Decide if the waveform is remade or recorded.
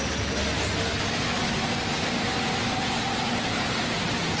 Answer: recorded